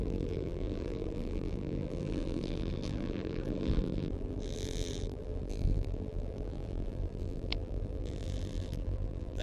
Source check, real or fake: fake